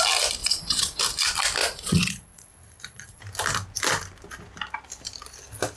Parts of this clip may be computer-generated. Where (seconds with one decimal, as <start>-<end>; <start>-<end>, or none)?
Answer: 0.4-1.0; 1.6-3.2